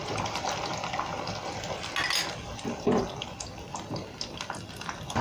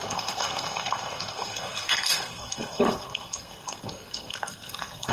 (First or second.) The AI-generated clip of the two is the second